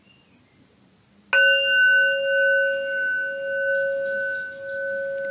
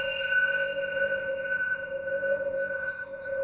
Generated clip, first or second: second